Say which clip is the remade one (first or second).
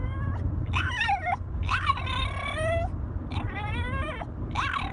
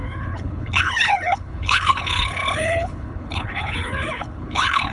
second